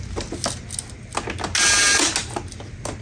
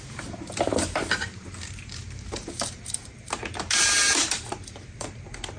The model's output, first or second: second